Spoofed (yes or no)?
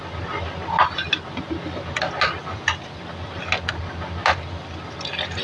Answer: no